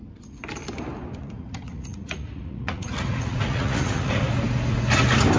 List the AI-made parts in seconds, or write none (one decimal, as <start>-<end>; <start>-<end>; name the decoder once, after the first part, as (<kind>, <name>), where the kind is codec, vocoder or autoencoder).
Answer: 1.2-4.2 (vocoder, Vocos)